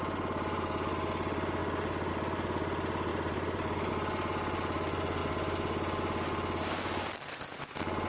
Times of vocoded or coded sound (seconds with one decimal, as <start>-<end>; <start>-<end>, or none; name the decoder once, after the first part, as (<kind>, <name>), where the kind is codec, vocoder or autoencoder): 3.1-3.9 (vocoder, BigVGAN v2)